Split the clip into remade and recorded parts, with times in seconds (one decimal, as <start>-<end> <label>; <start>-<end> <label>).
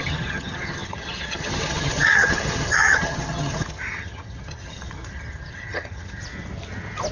0.0-6.2 remade; 6.2-7.1 recorded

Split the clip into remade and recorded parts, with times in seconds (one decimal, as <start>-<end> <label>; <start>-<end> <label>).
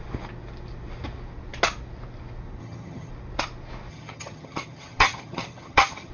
0.0-2.6 recorded; 2.6-3.1 remade; 3.1-3.9 recorded; 3.9-6.1 remade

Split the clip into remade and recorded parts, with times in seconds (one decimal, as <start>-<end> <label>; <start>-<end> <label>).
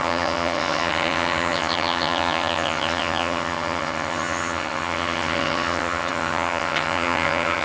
0.0-7.6 remade